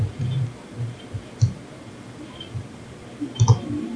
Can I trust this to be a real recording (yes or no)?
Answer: yes